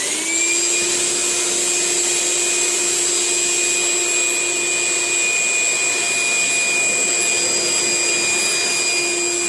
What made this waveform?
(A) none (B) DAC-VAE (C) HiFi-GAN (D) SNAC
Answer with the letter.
A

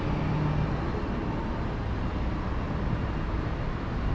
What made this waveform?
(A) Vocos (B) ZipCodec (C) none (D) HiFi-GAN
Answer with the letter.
C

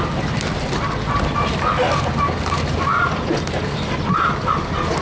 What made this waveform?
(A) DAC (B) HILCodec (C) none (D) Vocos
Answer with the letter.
C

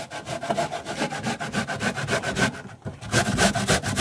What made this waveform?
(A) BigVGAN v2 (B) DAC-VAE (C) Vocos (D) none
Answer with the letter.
D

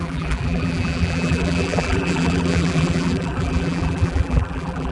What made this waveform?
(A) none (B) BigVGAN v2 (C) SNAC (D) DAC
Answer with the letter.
B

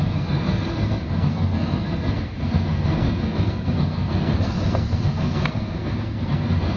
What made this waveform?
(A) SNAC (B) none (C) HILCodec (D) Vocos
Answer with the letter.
A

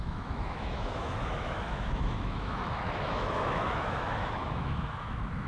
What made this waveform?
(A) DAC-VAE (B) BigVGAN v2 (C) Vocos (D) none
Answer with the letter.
A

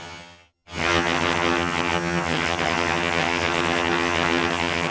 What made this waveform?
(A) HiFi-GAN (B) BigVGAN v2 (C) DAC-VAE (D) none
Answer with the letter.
A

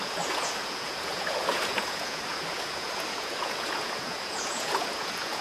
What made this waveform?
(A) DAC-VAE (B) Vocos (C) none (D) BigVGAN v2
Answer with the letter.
B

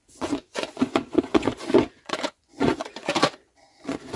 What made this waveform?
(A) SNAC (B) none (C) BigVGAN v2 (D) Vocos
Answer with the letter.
D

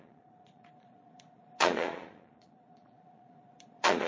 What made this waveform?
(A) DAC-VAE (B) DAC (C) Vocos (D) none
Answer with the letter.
C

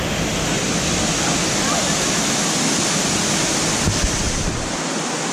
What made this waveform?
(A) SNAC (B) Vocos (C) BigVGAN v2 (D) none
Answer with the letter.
D